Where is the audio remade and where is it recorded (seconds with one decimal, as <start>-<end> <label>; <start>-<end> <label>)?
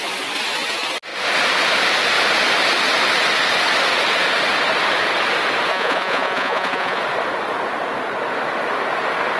0.0-5.7 recorded; 5.7-7.0 remade; 7.0-9.4 recorded